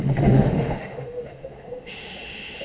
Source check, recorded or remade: remade